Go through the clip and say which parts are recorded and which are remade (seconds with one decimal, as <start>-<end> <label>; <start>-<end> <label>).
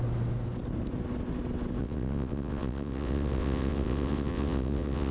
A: 0.0-1.8 recorded; 1.8-5.1 remade